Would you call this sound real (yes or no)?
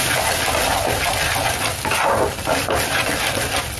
yes